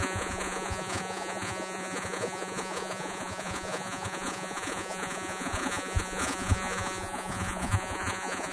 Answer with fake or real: fake